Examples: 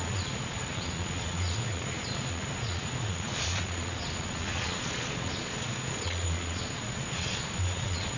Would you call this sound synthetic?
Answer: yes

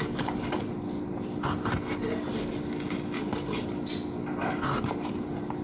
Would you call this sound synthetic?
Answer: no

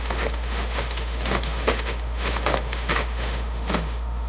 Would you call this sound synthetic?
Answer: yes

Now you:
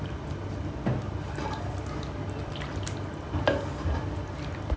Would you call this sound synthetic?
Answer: no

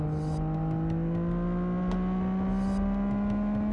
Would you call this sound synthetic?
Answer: no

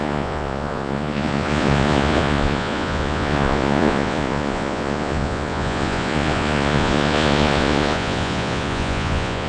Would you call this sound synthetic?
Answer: yes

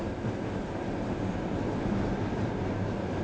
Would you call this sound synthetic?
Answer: no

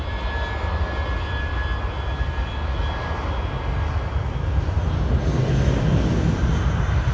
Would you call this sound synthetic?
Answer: no